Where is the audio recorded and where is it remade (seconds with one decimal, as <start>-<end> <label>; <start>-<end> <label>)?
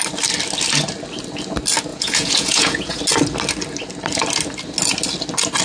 0.0-1.9 recorded; 1.9-3.0 remade; 3.0-5.6 recorded